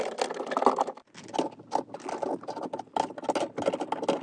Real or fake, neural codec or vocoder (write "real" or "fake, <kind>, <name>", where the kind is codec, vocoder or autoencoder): real